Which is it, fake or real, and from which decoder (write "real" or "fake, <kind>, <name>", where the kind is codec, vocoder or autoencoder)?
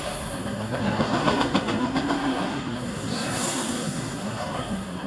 fake, codec, SNAC